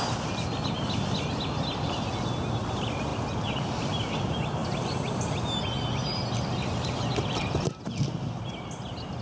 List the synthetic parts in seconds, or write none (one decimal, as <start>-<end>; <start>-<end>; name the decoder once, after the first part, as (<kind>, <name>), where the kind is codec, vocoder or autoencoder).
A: none